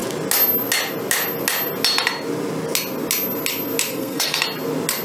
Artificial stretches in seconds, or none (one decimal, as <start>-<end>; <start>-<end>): 3.9-4.4